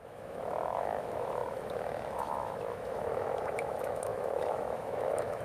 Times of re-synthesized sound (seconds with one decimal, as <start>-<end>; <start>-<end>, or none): 0.0-5.4